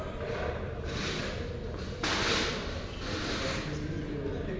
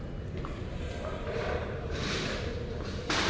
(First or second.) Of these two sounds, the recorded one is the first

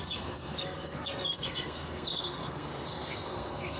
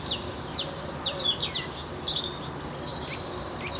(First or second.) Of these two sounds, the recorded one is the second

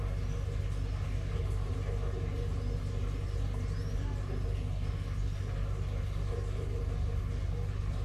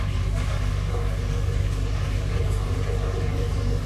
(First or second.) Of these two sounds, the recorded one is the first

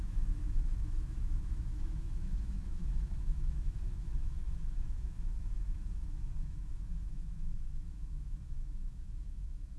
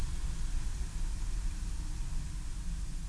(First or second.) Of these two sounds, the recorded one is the second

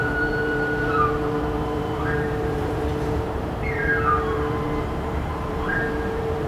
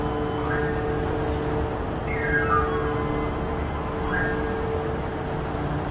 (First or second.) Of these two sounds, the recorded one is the second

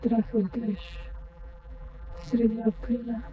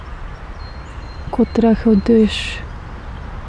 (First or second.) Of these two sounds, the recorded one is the second